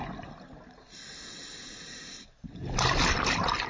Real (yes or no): yes